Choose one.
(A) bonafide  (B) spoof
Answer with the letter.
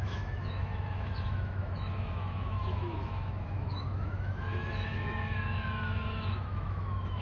B